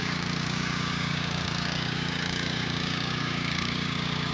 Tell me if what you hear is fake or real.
fake